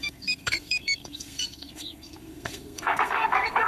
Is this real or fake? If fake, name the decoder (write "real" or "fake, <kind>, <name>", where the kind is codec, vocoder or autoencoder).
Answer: fake, codec, SNAC